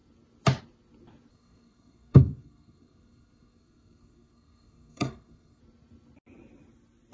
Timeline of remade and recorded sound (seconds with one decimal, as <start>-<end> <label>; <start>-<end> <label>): 0.0-1.3 recorded; 1.3-5.6 remade; 5.6-7.1 recorded